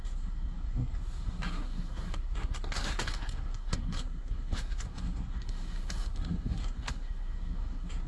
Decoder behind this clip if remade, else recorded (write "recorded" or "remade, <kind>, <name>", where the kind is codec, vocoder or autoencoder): remade, codec, SNAC